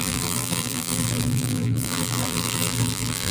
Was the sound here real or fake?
fake